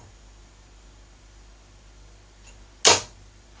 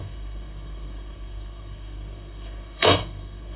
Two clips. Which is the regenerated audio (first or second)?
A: second